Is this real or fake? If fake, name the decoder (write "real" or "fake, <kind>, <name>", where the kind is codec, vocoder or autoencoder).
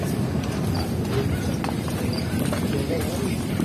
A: fake, vocoder, BigVGAN v2